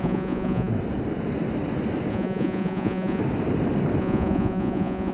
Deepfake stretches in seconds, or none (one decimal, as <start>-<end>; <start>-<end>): 0.0-0.7; 2.1-3.2; 4.0-5.1